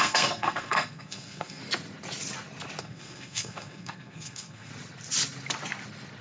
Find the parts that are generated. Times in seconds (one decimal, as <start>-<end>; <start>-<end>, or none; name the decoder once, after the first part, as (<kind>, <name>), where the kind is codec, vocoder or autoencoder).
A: 0.0-1.6 (codec, SNAC); 2.8-4.7